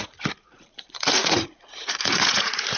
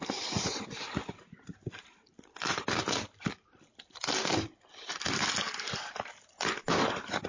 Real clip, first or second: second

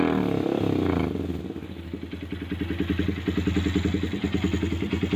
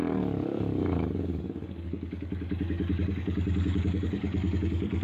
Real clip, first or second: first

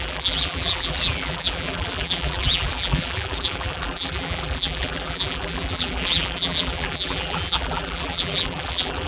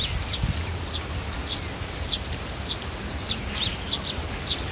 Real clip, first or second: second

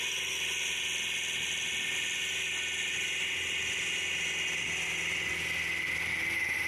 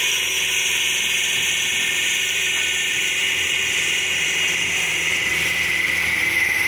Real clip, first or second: first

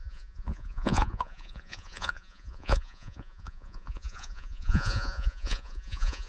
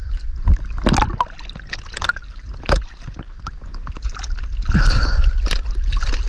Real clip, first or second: second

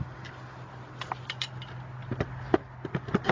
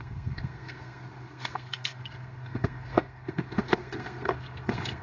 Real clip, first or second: first